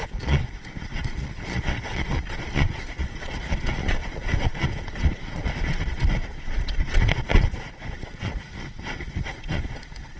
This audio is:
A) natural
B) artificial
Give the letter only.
B